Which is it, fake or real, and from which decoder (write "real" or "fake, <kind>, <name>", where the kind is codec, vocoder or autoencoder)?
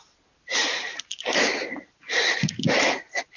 real